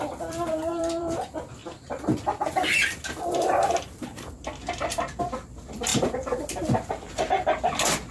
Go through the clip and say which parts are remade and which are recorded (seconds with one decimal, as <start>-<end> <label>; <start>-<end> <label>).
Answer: 0.0-4.1 remade; 4.1-4.7 recorded; 4.7-8.1 remade